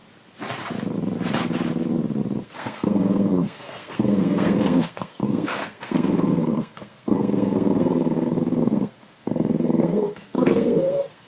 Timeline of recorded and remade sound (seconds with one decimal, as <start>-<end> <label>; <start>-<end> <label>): 0.0-2.4 recorded; 2.4-11.3 remade